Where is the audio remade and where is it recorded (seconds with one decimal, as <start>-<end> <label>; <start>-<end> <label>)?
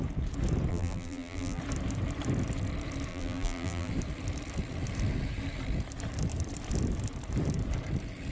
0.0-0.7 recorded; 0.7-1.6 remade; 1.6-3.1 recorded; 3.1-3.9 remade; 3.9-8.3 recorded